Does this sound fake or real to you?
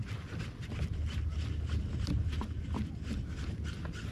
real